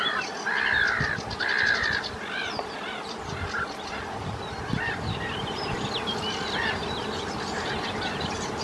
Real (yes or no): yes